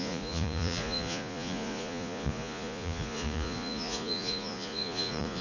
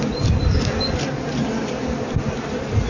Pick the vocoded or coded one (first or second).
first